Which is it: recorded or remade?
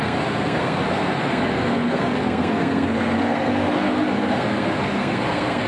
remade